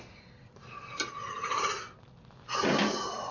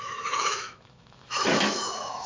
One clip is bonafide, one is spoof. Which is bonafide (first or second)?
first